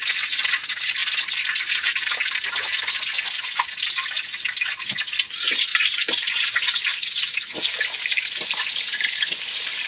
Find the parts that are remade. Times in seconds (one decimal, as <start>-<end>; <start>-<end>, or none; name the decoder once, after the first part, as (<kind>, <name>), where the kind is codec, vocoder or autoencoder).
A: 5.7-6.4 (vocoder, BigVGAN v2); 6.9-9.9